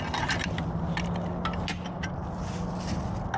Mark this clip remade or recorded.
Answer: recorded